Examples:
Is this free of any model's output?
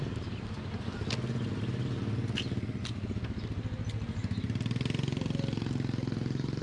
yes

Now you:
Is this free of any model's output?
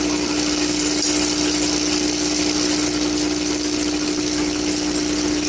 yes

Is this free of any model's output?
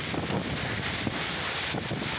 yes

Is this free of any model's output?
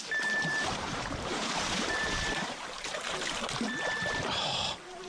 no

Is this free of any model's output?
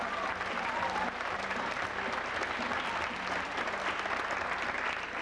yes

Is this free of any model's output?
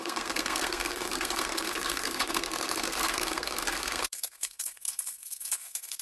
no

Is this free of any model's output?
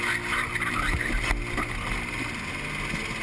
yes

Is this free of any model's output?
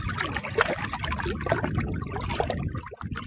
yes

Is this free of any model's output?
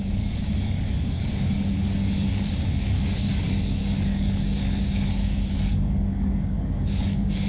no